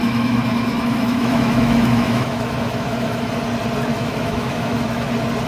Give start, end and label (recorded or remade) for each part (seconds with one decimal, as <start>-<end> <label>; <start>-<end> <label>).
0.0-3.3 remade; 3.3-3.9 recorded; 3.9-5.1 remade; 5.1-5.5 recorded